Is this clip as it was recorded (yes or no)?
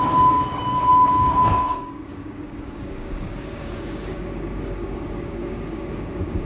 no